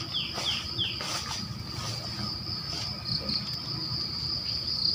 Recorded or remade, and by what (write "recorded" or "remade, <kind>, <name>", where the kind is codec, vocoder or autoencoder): recorded